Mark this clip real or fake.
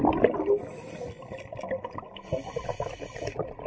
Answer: real